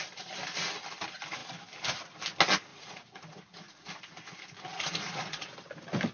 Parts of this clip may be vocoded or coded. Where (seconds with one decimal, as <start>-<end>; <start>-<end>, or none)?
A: 2.7-4.0; 4.7-5.5